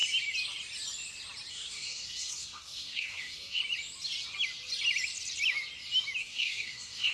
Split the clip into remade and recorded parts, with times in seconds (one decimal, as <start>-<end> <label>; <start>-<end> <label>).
0.0-1.5 recorded; 1.5-3.6 remade; 3.6-6.2 recorded; 6.2-7.1 remade